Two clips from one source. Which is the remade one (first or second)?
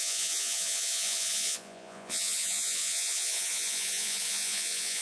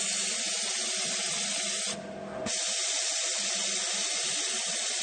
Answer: first